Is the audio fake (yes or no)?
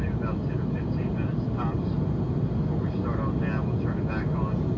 no